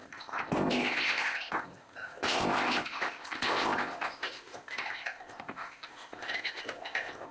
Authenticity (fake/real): fake